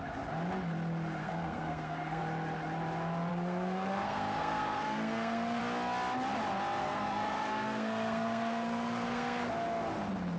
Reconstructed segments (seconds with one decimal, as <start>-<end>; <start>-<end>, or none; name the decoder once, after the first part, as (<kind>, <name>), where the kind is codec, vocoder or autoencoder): 1.2-2.2 (codec, SNAC); 3.3-5.6; 6.8-9.5

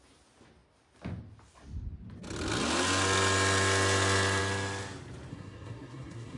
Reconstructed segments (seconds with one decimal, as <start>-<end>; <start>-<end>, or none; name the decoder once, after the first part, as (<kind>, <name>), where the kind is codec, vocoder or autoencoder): 5.3-6.4 (codec, SNAC)